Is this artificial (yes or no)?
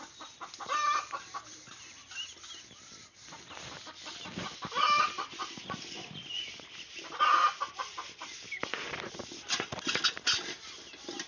no